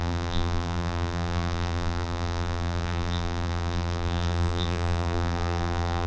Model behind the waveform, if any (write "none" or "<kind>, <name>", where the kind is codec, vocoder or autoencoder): vocoder, BigVGAN v2